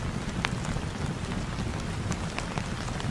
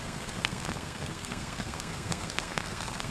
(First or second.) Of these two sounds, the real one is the first